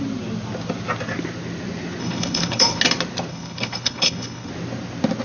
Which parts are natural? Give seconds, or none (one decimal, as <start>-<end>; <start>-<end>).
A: 0.0-2.0; 2.8-3.3; 4.5-5.2